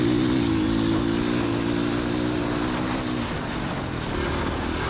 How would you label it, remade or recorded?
recorded